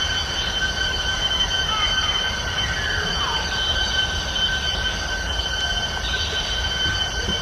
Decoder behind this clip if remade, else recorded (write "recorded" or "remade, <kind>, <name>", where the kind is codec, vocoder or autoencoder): recorded